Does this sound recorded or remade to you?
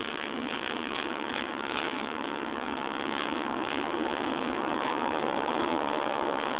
remade